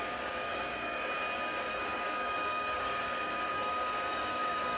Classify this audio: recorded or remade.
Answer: remade